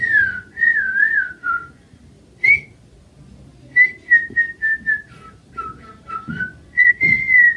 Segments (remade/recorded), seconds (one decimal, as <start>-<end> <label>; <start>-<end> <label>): 0.0-2.0 remade; 2.0-6.1 recorded; 6.1-7.6 remade